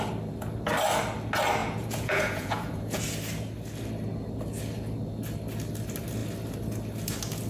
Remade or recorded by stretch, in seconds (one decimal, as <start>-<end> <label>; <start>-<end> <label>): 0.0-1.6 recorded; 1.6-3.0 remade; 3.0-7.5 recorded